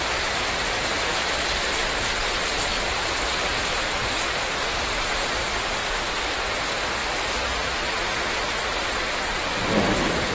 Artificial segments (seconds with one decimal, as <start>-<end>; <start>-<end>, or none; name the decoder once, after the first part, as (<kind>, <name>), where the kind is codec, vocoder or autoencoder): 0.0-5.8 (vocoder, BigVGAN v2); 6.5-10.3